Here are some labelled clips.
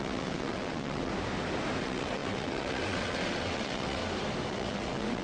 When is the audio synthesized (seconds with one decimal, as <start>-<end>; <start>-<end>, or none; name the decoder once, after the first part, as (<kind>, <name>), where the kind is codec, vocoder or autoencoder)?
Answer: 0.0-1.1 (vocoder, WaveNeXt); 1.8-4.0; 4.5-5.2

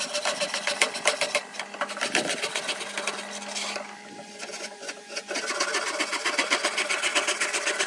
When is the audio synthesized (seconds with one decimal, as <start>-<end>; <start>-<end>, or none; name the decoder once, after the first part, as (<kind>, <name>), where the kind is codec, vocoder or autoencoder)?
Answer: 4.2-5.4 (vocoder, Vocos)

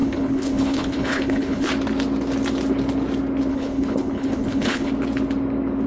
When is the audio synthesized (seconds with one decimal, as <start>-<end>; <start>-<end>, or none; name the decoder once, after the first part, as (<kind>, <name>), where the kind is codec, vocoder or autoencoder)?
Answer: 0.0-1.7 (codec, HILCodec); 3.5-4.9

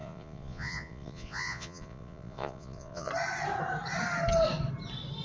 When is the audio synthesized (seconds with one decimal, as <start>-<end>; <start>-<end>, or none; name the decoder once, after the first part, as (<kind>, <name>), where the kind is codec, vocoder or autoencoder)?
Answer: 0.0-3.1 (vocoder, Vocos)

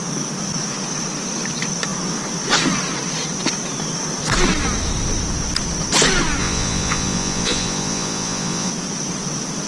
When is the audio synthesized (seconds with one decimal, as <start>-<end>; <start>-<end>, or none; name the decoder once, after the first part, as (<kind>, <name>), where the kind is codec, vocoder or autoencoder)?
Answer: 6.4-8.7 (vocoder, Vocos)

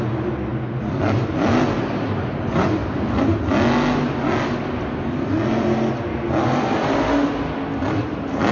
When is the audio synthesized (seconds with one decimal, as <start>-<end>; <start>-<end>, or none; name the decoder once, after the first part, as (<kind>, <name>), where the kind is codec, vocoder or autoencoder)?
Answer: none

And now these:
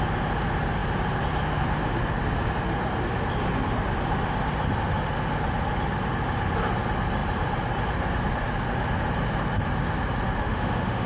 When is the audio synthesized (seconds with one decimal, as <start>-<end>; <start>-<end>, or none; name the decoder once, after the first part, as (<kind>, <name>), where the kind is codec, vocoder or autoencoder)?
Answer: 10.4-11.1 (autoencoder, DAC-VAE)